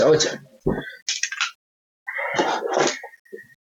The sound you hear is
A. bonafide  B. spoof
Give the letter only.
A